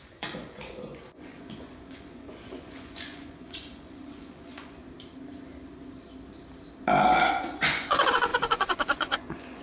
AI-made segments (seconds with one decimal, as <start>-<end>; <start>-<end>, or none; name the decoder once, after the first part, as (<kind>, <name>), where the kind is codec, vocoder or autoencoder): 0.0-4.8 (vocoder, Vocos); 7.2-9.6